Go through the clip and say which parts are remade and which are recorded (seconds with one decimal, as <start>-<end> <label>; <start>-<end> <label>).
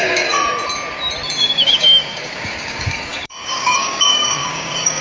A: 0.0-0.4 remade; 0.4-1.4 recorded; 1.4-5.0 remade